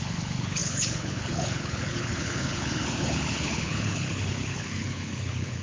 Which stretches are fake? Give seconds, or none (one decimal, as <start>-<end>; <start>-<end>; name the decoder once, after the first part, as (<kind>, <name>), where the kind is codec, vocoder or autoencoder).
0.0-5.6 (codec, HILCodec)